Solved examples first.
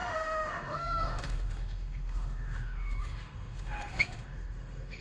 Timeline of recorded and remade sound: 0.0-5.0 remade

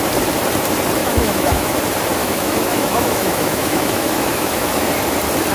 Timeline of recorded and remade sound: 0.0-1.0 recorded; 1.0-1.8 remade; 1.8-2.2 recorded; 2.2-4.9 remade; 4.9-5.5 recorded

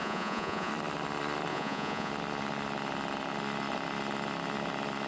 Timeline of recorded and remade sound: 0.0-0.7 remade; 0.7-1.5 recorded; 1.5-2.1 remade; 2.1-5.1 recorded

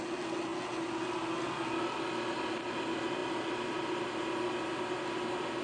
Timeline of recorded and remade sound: 0.0-5.6 recorded